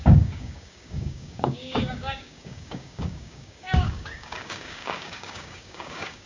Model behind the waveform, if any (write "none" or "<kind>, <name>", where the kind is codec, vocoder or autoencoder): codec, DAC